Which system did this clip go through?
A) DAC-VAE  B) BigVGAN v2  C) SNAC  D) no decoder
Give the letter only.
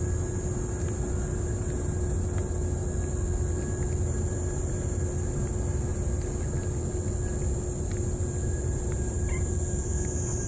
D